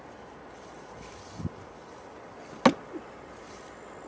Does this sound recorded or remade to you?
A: recorded